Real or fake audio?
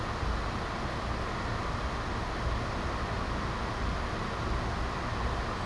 real